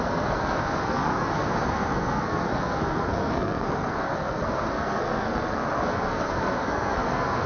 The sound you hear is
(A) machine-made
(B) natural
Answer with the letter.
A